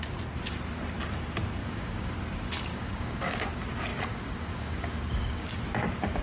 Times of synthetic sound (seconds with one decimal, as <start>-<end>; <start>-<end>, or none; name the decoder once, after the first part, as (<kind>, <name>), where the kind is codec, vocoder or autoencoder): 1.6-2.1 (codec, DAC); 2.7-3.5; 3.9-5.5